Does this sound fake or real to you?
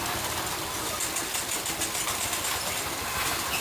real